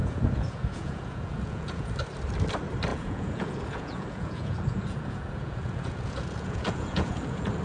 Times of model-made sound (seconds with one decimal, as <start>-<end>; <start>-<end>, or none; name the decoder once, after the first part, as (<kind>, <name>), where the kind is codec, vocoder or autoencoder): 0.0-1.9 (vocoder, Vocos); 2.9-7.6